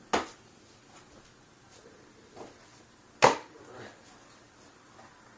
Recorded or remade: recorded